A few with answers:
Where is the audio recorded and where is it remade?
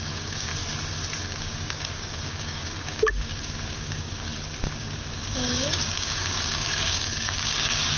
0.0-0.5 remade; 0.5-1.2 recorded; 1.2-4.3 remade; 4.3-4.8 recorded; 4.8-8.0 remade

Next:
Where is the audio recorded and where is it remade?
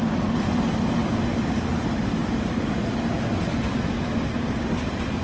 0.0-5.2 recorded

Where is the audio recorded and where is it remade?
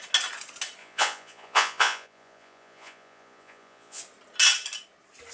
0.0-0.8 recorded; 0.8-4.0 remade; 4.0-5.3 recorded